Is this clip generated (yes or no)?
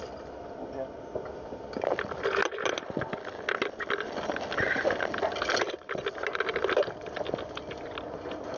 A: no